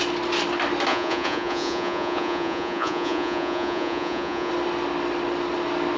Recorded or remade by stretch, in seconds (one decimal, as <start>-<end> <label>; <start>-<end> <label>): 0.0-0.9 recorded; 0.9-4.5 remade; 4.5-6.0 recorded